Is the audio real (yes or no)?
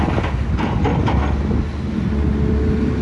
yes